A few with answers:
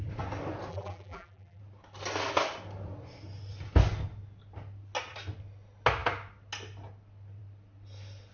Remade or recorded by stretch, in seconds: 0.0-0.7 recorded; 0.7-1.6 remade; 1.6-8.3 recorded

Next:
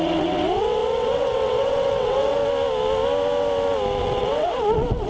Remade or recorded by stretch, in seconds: 0.0-2.4 remade; 2.4-4.0 recorded; 4.0-5.1 remade

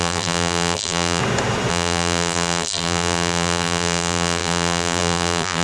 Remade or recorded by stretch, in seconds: 0.0-1.2 remade; 1.2-1.7 recorded; 1.7-5.6 remade

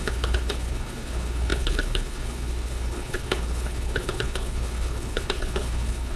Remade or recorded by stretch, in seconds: 0.0-6.2 remade

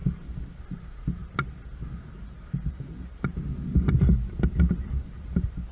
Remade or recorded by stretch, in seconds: 0.0-5.7 recorded

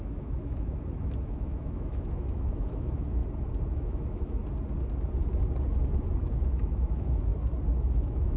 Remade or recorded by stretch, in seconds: 0.0-3.2 remade; 3.2-3.7 recorded; 3.7-4.4 remade; 4.4-6.2 recorded; 6.2-7.3 remade; 7.3-8.0 recorded; 8.0-8.4 remade